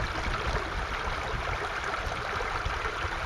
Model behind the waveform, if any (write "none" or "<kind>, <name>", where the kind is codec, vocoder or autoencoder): none